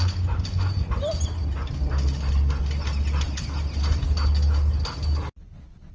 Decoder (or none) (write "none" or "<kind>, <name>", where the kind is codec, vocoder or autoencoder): none